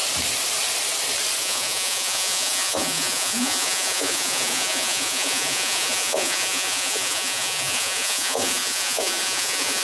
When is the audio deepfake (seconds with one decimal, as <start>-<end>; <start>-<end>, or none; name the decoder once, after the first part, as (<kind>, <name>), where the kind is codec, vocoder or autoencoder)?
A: 1.4-9.8 (vocoder, Vocos)